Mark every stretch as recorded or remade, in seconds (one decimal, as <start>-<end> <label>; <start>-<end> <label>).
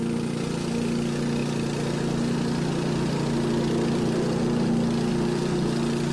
0.0-6.1 recorded